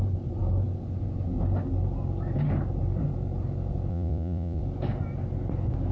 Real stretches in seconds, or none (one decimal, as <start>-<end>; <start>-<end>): 0.0-3.9; 4.6-5.9